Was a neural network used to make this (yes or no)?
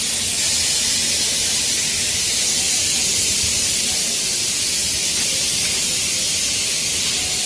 no